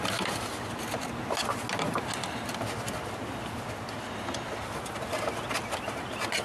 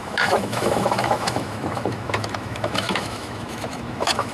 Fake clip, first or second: second